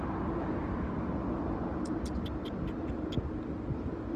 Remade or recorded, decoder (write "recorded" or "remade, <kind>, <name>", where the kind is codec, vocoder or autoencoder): recorded